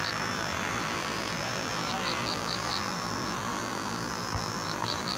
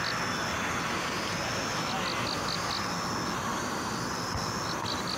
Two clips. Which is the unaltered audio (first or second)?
second